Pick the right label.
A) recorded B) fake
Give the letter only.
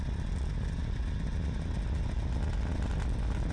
A